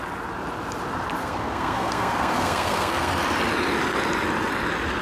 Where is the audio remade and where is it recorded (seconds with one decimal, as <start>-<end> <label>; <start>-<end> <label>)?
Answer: 0.0-1.2 recorded; 1.2-3.1 remade; 3.1-5.0 recorded